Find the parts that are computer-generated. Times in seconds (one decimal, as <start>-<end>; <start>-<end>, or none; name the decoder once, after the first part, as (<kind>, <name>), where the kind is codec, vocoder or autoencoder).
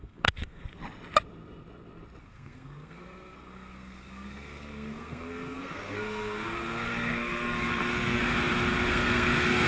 0.0-0.8 (codec, SNAC); 2.2-8.2; 8.9-9.7